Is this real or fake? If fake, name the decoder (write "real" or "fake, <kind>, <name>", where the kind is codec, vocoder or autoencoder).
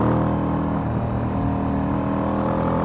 real